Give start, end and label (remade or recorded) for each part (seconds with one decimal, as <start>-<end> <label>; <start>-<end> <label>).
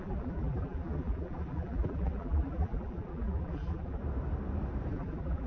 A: 0.0-4.0 remade; 4.0-4.9 recorded; 4.9-5.5 remade